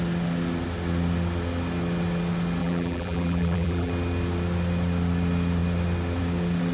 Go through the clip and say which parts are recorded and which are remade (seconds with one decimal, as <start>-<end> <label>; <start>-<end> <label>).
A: 0.0-2.6 recorded; 2.6-3.9 remade; 3.9-6.7 recorded